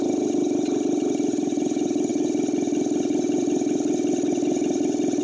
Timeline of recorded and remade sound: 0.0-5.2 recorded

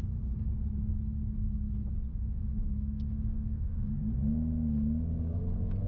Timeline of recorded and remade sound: 0.0-2.1 recorded; 2.1-3.9 remade; 3.9-5.9 recorded